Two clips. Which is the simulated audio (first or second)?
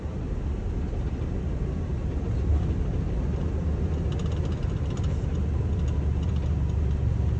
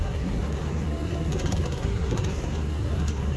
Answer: second